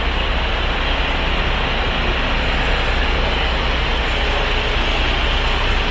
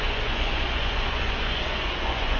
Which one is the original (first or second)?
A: first